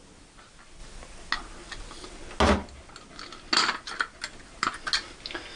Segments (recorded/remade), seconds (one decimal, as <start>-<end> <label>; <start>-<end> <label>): 0.0-5.6 recorded